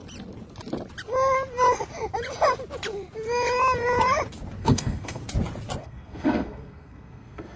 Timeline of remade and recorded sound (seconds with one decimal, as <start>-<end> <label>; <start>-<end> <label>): 0.0-4.6 recorded; 4.6-5.2 remade; 5.2-5.8 recorded; 5.8-7.6 remade